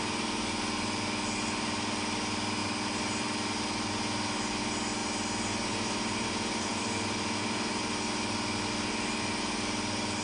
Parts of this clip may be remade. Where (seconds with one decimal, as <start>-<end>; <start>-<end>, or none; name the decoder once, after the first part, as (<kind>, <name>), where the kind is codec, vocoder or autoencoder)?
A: none